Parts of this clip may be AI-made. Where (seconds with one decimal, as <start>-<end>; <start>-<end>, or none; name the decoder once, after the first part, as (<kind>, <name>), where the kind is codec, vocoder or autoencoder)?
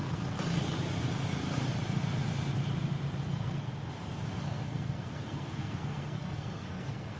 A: 0.0-0.4 (codec, SNAC); 3.3-3.7; 4.4-7.2